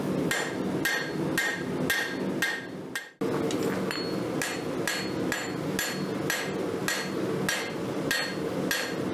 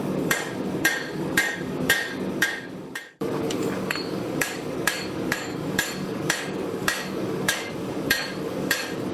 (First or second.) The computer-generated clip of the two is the second